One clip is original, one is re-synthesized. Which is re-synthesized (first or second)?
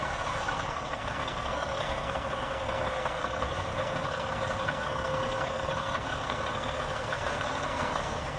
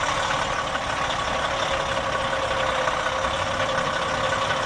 first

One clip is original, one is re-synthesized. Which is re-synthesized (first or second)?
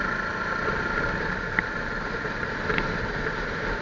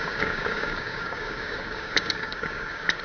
second